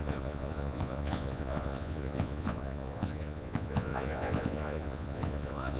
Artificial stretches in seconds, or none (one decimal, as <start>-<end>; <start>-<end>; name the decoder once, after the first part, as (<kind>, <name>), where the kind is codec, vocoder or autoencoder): 0.0-5.8 (vocoder, Vocos)